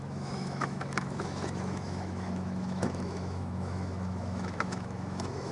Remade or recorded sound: remade